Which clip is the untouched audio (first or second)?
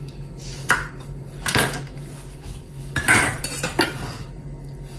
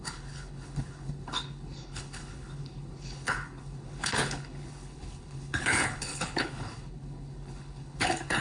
first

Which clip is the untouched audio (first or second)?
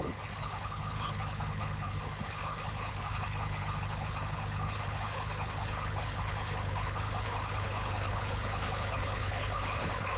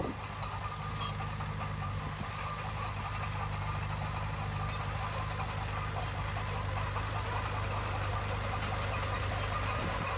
second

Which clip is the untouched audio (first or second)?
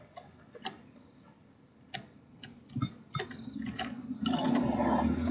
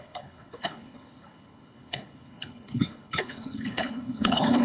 first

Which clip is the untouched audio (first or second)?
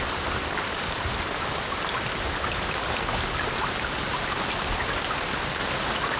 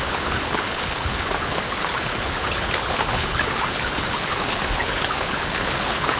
first